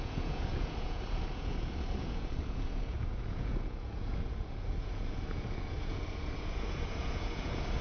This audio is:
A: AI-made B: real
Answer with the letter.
A